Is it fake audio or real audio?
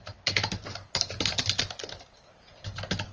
real